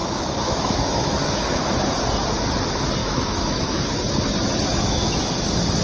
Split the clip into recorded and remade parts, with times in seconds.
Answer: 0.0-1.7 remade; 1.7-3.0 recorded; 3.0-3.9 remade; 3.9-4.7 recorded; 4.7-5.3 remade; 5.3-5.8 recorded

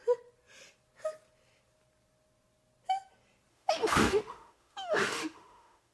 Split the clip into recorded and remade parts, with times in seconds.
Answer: 0.0-3.5 recorded; 3.5-5.9 remade

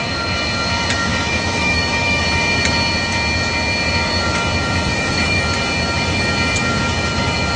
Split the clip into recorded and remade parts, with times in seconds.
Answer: 0.0-1.1 recorded; 1.1-2.2 remade; 2.2-4.9 recorded; 4.9-5.4 remade; 5.4-7.6 recorded

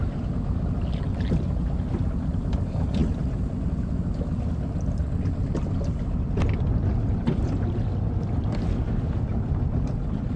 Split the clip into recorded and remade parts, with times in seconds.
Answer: 0.0-10.4 recorded

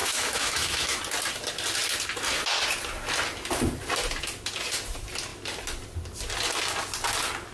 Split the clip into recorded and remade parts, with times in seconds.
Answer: 0.0-1.0 remade; 1.0-7.5 recorded

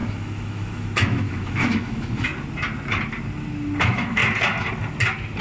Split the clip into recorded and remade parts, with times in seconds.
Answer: 0.0-2.3 remade; 2.3-3.8 recorded; 3.8-4.2 remade; 4.2-5.4 recorded

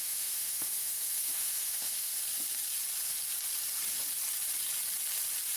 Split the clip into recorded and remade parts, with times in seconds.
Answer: 0.0-2.1 remade; 2.1-5.6 recorded

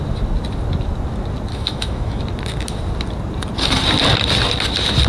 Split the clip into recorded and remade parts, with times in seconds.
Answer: 0.0-1.5 recorded; 1.5-2.2 remade; 2.2-5.1 recorded